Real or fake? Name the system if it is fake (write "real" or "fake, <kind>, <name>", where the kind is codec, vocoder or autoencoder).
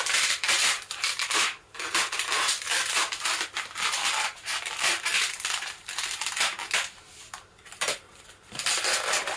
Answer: fake, vocoder, BigVGAN v2